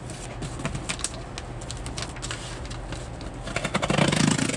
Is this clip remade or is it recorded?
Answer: recorded